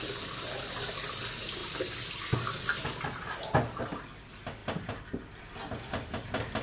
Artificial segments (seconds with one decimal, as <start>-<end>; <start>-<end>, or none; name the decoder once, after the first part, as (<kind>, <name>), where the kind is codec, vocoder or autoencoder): none